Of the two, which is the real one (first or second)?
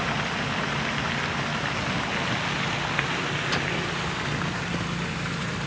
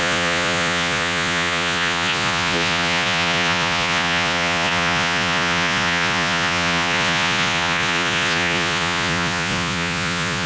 first